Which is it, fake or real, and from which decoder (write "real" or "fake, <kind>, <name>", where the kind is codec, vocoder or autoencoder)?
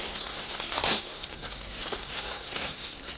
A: fake, codec, SNAC